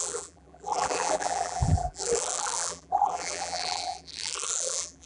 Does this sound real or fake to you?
fake